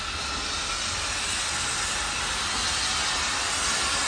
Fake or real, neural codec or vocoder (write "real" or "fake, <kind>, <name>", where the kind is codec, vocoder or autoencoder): real